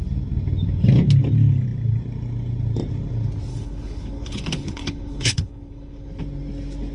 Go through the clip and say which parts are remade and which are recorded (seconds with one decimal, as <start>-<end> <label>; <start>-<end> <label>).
0.0-3.5 recorded; 3.5-6.2 remade; 6.2-6.9 recorded